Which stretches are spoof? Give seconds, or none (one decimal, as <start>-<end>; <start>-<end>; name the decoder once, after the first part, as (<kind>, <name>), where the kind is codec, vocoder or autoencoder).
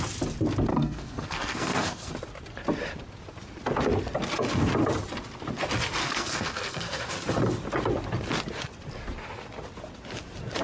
0.7-2.1 (codec, SNAC); 6.0-7.1